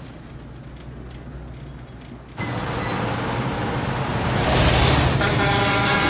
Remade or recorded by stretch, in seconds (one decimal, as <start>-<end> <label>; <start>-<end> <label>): 0.0-4.1 recorded; 4.1-5.3 remade; 5.3-6.1 recorded